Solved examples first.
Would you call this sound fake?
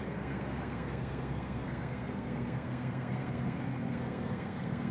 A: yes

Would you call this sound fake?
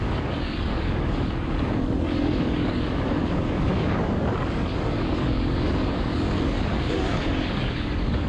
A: yes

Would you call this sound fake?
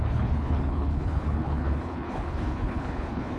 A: yes